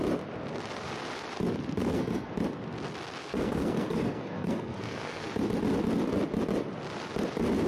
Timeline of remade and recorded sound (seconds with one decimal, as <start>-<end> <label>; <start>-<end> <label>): 0.0-1.8 recorded; 1.8-2.3 remade; 2.3-3.2 recorded; 3.2-5.3 remade; 5.3-7.7 recorded